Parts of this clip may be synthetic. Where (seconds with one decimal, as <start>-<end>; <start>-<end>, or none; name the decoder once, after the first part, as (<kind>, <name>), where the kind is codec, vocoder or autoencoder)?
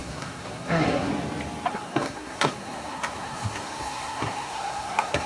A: 0.0-1.1 (codec, SNAC); 1.7-5.3